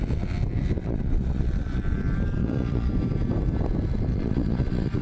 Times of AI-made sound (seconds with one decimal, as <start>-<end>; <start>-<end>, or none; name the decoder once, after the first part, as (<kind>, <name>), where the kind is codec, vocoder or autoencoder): 0.8-1.8 (vocoder, Vocos); 2.4-2.9; 4.1-5.0